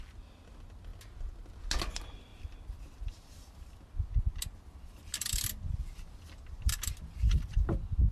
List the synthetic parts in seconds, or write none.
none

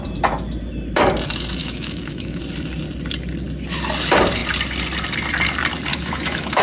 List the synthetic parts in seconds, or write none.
1.6-2.4 (autoencoder, DAC-VAE); 5.9-6.6